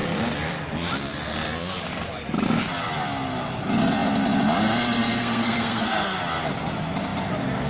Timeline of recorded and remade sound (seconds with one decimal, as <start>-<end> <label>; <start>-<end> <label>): 0.0-5.2 recorded; 5.2-6.2 remade; 6.2-7.7 recorded